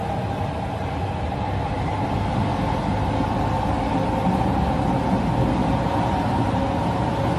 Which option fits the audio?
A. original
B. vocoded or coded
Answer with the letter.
A